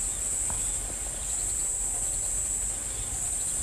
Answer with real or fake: real